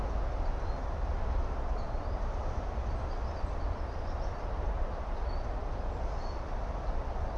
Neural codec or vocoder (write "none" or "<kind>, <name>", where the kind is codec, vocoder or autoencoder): none